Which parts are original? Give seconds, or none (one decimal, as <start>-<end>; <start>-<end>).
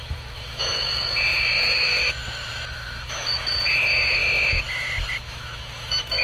none